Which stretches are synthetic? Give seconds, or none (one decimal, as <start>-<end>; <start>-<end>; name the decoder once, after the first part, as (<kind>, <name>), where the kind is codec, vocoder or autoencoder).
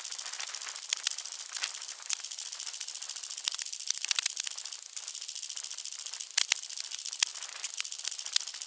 none